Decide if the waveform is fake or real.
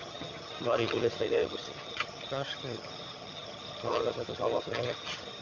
fake